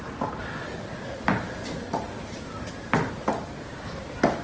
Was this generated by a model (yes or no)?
no